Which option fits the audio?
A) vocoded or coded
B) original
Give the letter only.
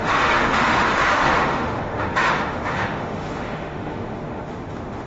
A